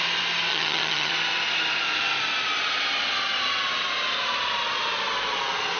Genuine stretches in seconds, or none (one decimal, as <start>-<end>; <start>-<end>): 0.0-0.5; 1.1-5.8